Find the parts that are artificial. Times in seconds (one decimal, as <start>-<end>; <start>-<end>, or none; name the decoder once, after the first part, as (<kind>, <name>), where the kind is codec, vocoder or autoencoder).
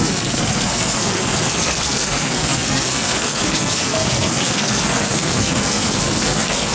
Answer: 0.0-6.7 (codec, SNAC)